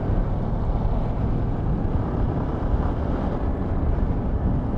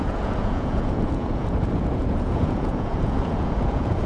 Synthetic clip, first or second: second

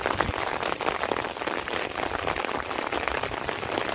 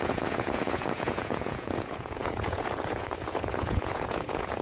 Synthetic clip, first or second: second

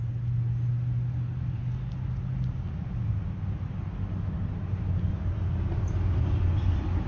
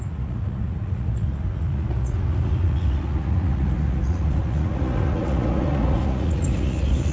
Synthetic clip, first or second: second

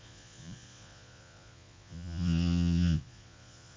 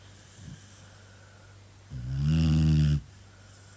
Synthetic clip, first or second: first